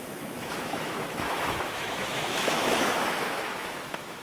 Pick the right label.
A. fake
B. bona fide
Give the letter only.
A